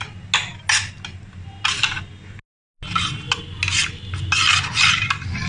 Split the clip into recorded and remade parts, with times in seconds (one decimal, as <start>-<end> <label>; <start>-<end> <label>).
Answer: 0.0-5.5 recorded